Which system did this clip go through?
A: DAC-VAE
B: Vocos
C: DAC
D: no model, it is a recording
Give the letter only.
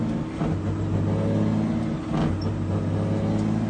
D